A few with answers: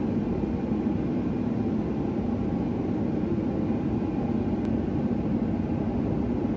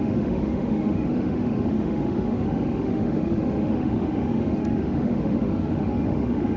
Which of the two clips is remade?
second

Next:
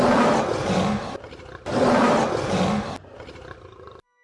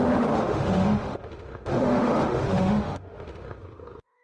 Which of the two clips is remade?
second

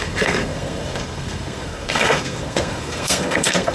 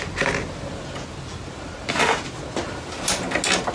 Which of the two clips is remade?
first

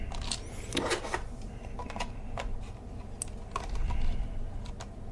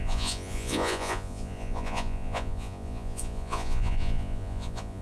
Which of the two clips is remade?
second